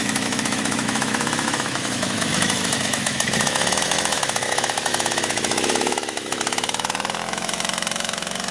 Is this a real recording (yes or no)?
no